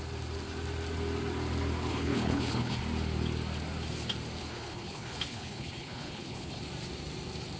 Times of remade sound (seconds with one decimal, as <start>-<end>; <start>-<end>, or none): 1.9-2.8; 4.4-6.6